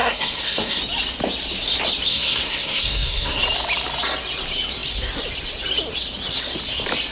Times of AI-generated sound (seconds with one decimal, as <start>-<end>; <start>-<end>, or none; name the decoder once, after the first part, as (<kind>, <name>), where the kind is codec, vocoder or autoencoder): 0.0-0.8 (codec, SNAC); 2.1-3.4